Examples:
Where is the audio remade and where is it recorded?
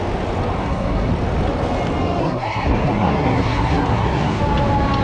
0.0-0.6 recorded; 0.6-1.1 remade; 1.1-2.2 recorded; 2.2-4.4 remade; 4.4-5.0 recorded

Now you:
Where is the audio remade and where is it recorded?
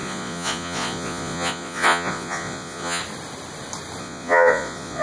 0.0-3.0 remade; 3.0-4.0 recorded; 4.0-5.0 remade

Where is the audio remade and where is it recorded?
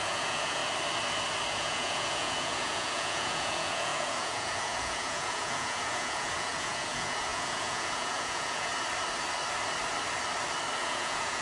0.0-0.6 remade; 0.6-1.5 recorded; 1.5-8.7 remade; 8.7-10.8 recorded; 10.8-11.4 remade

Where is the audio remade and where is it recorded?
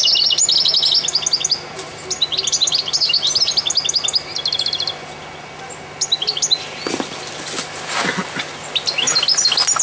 0.0-9.8 recorded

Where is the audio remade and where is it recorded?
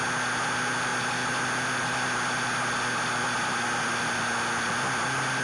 0.0-5.4 recorded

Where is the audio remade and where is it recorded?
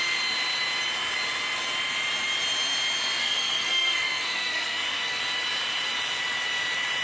0.0-3.2 recorded; 3.2-5.2 remade; 5.2-7.0 recorded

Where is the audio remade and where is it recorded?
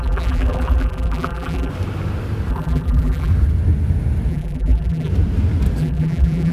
0.0-1.7 remade; 1.7-2.5 recorded; 2.5-3.3 remade; 3.3-4.3 recorded; 4.3-5.1 remade; 5.1-5.8 recorded; 5.8-6.5 remade